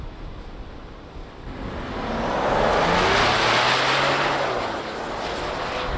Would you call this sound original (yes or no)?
yes